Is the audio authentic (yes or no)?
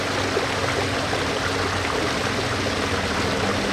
yes